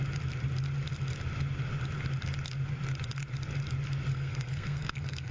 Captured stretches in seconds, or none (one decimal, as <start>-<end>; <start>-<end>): 0.0-4.1